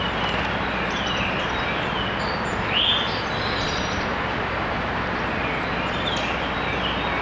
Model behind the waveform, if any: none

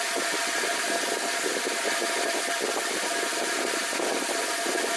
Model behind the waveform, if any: none